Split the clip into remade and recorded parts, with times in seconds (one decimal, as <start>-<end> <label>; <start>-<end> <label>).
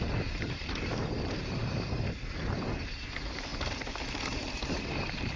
0.0-5.4 recorded